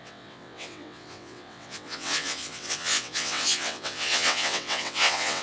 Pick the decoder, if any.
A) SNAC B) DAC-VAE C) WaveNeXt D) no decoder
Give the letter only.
C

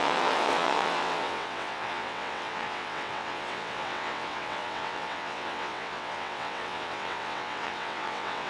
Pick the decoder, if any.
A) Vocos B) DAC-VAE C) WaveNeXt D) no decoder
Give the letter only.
C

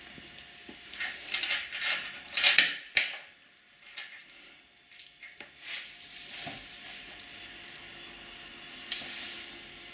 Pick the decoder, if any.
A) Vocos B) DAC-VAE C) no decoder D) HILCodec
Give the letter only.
C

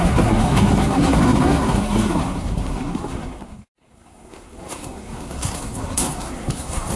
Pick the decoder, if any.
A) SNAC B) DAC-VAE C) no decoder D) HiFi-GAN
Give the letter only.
A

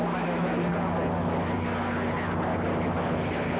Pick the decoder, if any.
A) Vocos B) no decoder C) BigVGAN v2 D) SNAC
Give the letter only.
B